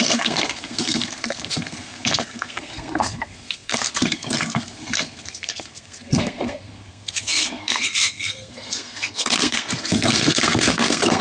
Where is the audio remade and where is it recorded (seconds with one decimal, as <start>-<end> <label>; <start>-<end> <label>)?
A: 0.0-11.2 remade